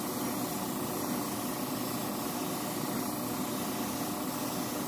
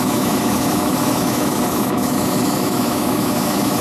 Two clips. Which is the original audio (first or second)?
first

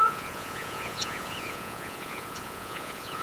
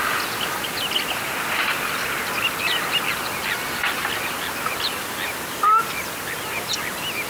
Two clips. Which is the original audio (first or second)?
second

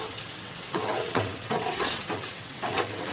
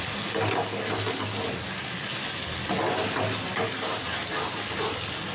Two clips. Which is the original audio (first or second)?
second